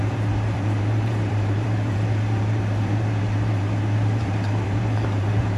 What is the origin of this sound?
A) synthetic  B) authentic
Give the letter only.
A